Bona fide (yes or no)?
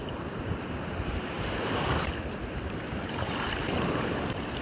no